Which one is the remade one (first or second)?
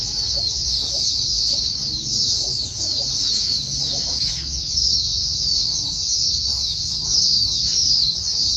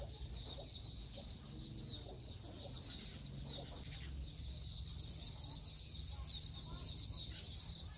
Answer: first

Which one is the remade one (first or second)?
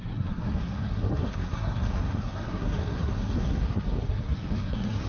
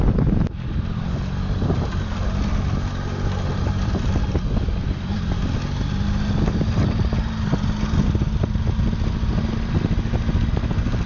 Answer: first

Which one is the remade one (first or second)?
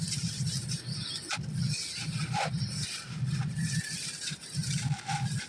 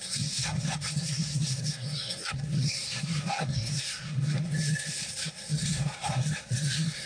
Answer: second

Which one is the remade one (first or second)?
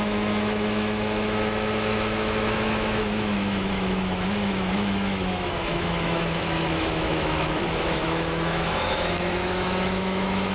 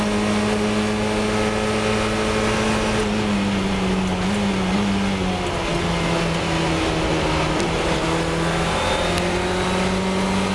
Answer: first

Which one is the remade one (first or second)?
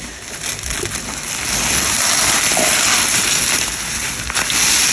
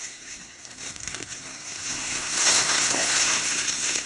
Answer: second